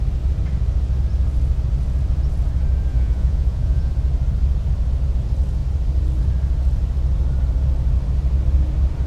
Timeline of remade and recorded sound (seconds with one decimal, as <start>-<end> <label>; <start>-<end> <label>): 0.0-2.9 recorded; 2.9-3.9 remade; 3.9-9.1 recorded